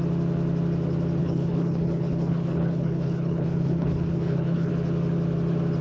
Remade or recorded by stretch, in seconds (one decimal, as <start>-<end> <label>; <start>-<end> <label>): 0.0-1.2 recorded; 1.2-4.7 remade; 4.7-5.8 recorded